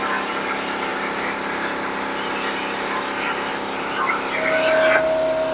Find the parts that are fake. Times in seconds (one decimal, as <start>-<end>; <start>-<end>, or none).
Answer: none